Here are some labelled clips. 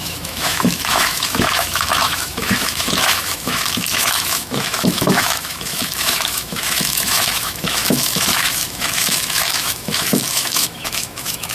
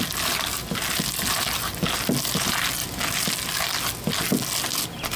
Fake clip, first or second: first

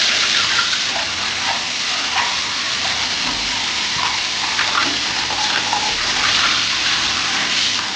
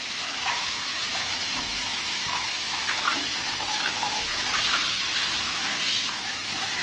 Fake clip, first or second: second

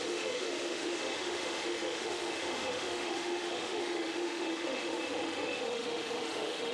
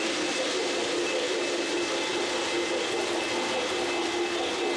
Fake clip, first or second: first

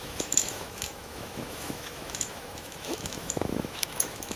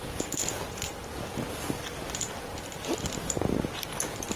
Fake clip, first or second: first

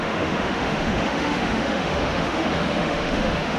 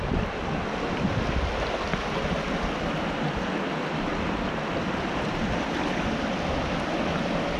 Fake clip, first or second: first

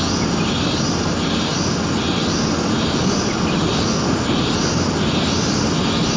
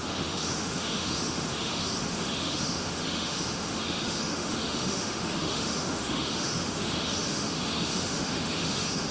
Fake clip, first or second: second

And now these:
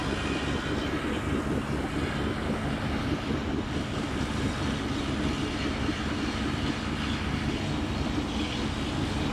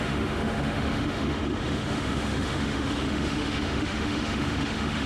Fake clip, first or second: second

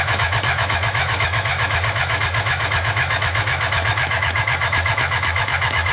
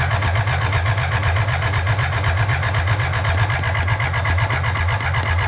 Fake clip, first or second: first